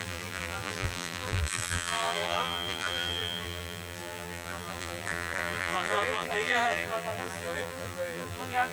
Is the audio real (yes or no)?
no